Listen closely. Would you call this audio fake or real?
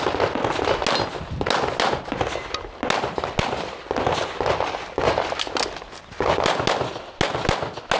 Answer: real